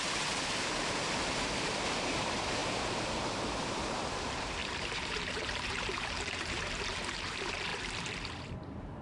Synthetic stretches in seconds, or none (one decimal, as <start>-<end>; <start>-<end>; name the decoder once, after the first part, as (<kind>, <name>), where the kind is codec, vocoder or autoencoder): 0.0-7.7 (vocoder, BigVGAN v2); 8.5-9.0